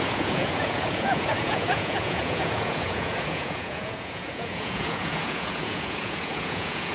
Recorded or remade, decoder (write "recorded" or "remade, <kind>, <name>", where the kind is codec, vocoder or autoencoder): remade, vocoder, Vocos